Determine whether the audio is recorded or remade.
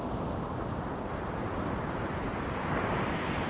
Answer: recorded